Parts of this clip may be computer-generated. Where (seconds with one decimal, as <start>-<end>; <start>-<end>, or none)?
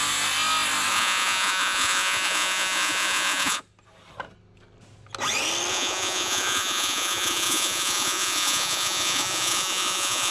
0.9-3.6; 5.7-10.3